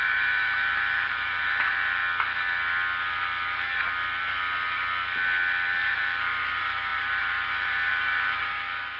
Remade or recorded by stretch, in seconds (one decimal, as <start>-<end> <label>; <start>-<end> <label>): 0.0-2.0 remade; 2.0-5.8 recorded; 5.8-9.0 remade